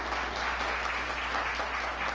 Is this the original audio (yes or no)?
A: yes